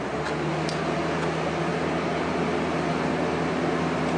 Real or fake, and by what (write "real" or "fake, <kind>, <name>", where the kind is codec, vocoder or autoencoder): real